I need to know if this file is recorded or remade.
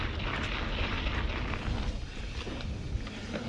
recorded